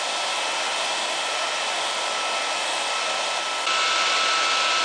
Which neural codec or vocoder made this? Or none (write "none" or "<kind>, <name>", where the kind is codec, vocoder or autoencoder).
none